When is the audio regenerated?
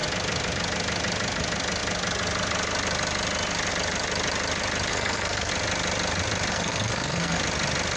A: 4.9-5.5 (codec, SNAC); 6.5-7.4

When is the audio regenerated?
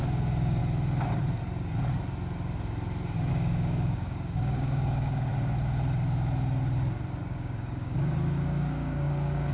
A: 0.0-0.6 (codec, DAC); 3.3-5.3; 7.2-9.5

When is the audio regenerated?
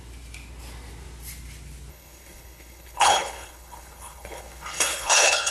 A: 1.9-5.5 (codec, HILCodec)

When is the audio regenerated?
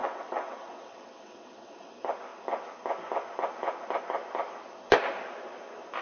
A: 0.0-1.9 (vocoder, WaveNeXt)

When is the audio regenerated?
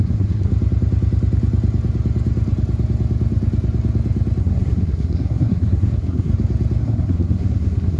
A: 0.0-0.5 (codec, SNAC); 4.4-6.3; 6.8-8.0